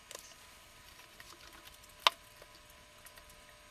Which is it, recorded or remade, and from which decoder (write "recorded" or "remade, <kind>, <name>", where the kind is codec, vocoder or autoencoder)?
recorded